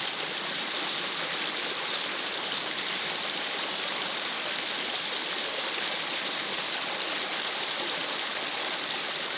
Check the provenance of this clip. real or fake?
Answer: real